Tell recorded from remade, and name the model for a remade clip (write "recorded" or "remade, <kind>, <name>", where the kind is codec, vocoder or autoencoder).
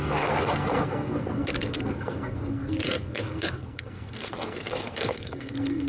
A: remade, codec, SNAC